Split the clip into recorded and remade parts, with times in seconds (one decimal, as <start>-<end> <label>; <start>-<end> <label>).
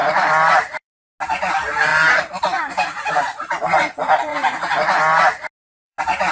0.0-1.0 remade; 1.0-1.9 recorded; 1.9-3.1 remade; 3.1-4.3 recorded; 4.3-5.0 remade; 5.0-5.6 recorded; 5.6-6.3 remade